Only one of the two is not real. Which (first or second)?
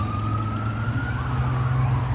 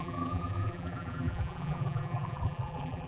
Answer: second